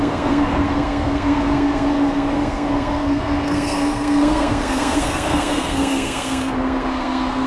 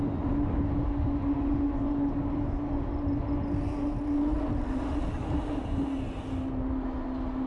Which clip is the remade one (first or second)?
first